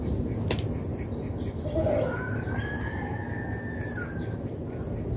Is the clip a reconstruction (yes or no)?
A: no